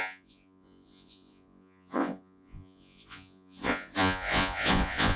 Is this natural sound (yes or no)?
no